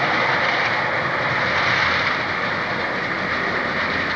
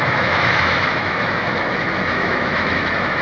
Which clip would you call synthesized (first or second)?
second